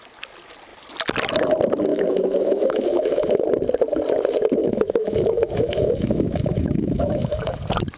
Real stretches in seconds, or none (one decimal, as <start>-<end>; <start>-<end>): 0.0-1.9; 3.4-4.6; 7.4-8.0

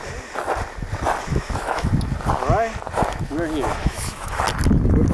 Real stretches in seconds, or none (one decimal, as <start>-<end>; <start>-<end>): 0.0-1.3; 1.9-3.8; 4.4-5.1

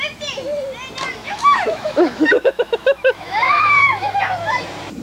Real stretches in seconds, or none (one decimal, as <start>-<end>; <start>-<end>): 0.0-1.2; 4.2-5.0